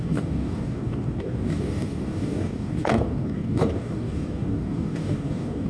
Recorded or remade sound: remade